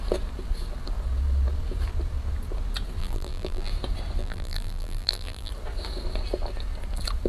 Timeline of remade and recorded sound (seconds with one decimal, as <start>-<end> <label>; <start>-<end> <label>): 0.0-3.0 recorded; 3.0-3.7 remade; 3.7-4.2 recorded; 4.2-5.5 remade; 5.5-7.3 recorded